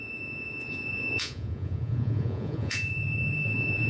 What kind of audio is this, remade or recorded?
remade